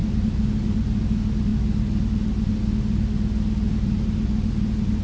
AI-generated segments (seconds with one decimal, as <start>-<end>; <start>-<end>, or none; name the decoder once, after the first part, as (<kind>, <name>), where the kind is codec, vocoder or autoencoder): none